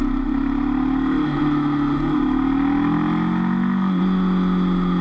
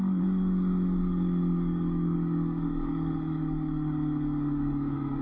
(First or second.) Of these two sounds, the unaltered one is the first